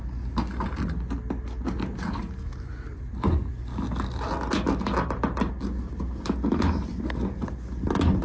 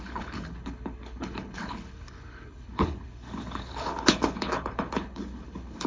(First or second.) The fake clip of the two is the second